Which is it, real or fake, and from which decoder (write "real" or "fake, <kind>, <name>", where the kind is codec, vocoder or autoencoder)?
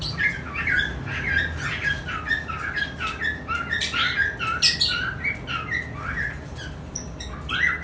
real